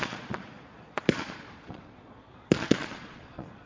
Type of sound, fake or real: fake